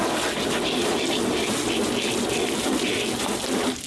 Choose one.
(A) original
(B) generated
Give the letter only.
A